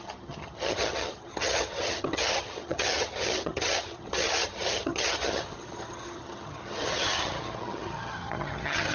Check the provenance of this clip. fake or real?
fake